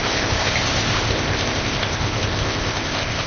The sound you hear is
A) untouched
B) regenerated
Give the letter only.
B